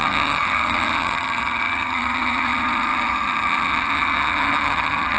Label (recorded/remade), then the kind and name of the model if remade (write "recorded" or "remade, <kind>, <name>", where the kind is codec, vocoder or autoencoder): remade, vocoder, HiFi-GAN